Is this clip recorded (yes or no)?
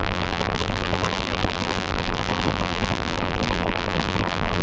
no